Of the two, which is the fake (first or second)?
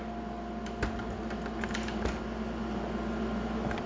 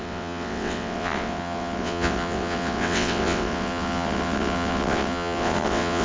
second